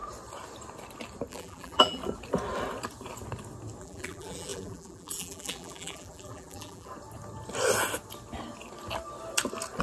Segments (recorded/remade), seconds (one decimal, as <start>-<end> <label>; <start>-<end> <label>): 0.0-1.3 recorded; 1.3-2.0 remade; 2.0-3.8 recorded; 3.8-6.9 remade; 6.9-9.8 recorded